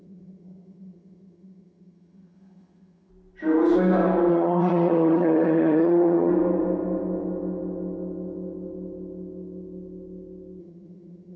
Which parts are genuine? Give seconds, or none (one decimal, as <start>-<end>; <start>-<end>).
3.1-4.3; 6.3-10.6